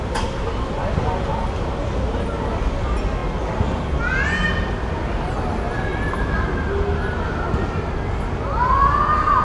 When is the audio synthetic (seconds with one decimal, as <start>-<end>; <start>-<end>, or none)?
none